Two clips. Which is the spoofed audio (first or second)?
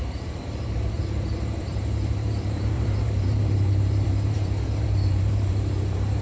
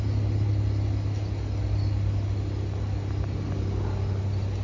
first